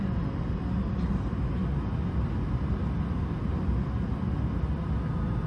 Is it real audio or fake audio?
real